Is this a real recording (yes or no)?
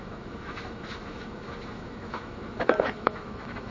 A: no